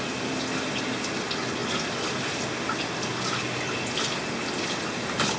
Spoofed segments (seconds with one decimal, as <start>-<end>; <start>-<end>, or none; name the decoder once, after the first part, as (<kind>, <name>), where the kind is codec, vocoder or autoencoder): none